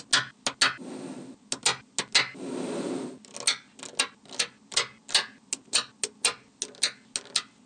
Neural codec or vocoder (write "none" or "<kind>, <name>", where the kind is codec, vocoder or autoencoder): none